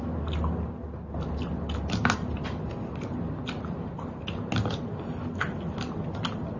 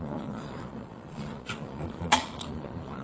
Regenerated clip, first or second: second